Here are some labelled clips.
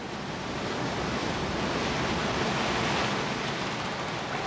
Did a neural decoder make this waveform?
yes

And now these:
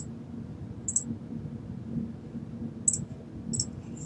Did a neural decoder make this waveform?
no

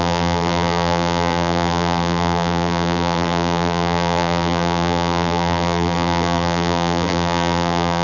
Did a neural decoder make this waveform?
yes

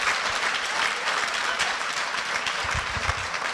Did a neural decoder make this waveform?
yes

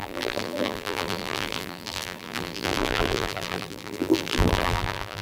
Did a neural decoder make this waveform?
yes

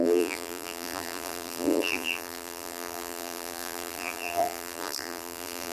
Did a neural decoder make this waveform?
yes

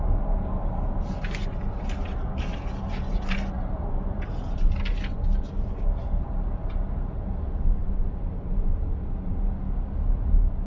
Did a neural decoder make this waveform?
no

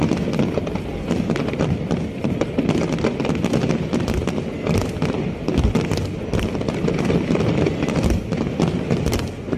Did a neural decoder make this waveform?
no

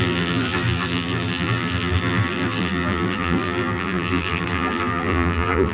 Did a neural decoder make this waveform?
yes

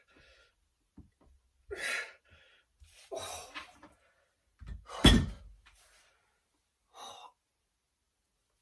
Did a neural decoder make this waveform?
no